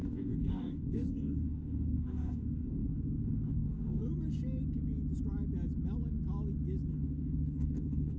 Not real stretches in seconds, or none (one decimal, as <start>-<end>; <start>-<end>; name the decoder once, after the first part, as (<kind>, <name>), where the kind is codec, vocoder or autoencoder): 0.0-4.0 (codec, DAC); 6.9-8.2